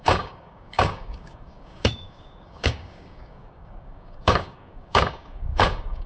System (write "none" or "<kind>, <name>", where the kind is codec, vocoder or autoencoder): codec, DAC